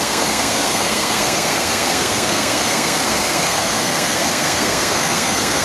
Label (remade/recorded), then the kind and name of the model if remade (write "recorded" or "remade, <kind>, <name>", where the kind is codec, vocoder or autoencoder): remade, codec, SNAC